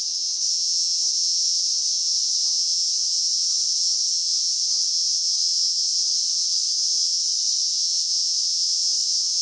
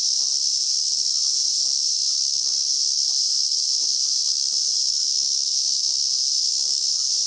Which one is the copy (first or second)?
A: first